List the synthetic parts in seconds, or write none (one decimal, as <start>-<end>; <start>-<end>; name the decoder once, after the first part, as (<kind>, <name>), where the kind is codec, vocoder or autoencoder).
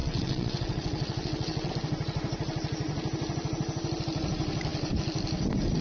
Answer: 0.0-1.7 (vocoder, WaveNeXt)